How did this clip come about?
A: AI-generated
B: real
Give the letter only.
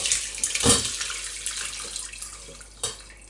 B